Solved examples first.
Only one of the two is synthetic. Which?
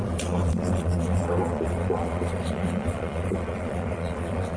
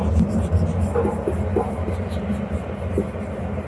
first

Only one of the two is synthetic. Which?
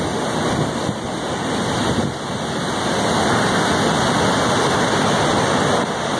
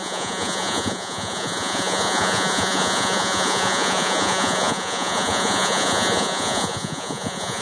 second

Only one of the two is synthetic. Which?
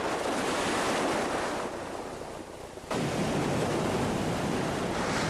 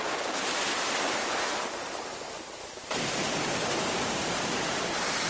second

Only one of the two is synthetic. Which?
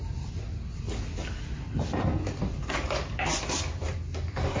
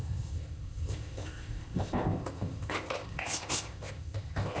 second